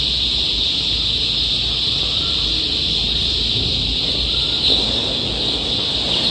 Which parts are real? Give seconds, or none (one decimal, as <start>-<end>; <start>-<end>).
0.0-4.7; 5.7-6.3